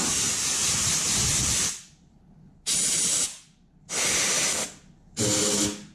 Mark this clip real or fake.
real